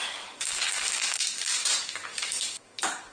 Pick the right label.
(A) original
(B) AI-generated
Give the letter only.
B